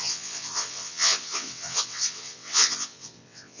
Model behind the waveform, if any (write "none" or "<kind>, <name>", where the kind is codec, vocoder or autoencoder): vocoder, WaveNeXt